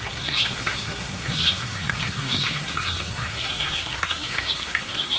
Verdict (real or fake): fake